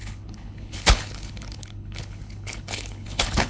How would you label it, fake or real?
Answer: fake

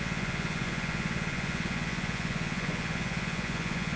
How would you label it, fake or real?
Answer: fake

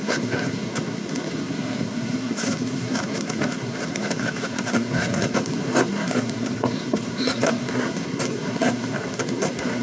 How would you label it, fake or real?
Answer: fake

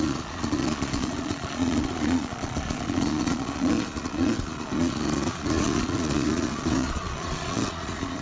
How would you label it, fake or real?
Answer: fake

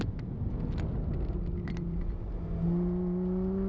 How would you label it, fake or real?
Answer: real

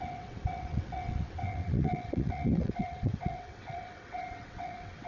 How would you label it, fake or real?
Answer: fake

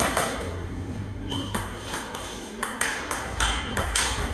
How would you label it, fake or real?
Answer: fake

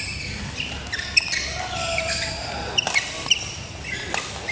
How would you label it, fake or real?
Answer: real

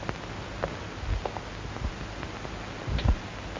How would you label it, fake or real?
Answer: real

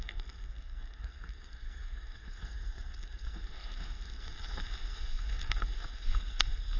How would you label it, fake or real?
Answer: fake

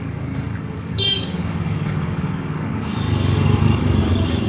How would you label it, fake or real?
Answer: fake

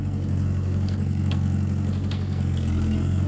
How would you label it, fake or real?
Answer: fake